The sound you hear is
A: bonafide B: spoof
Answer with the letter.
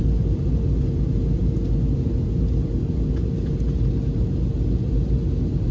A